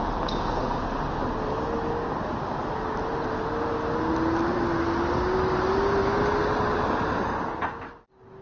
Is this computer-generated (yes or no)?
no